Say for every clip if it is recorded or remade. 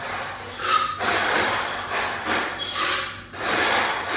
recorded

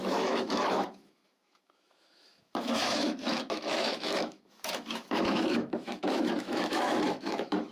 remade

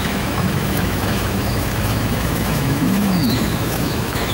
remade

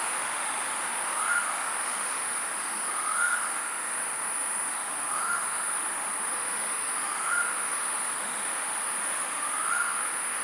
remade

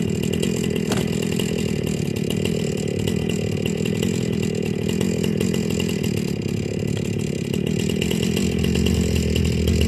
recorded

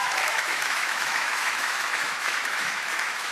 remade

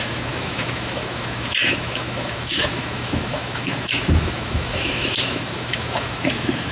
remade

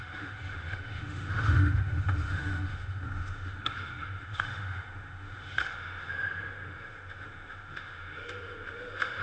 remade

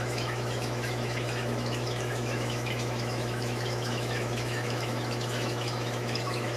remade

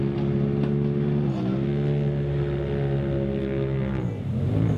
recorded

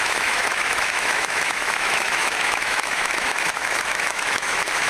remade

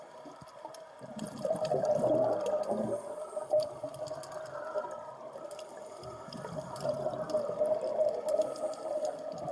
recorded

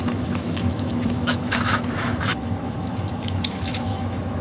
remade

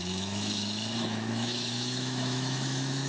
remade